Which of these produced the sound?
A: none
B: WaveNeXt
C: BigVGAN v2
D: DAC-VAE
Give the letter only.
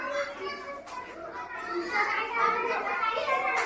A